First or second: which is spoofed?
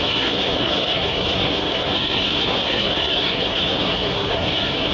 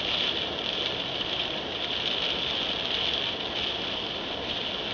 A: first